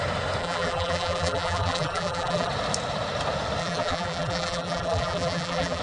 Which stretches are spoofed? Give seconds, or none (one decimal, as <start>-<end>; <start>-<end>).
0.4-2.5; 3.6-5.8